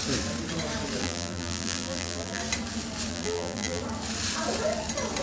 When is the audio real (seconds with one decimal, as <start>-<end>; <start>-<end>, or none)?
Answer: 0.0-1.0; 2.4-3.1; 3.8-5.2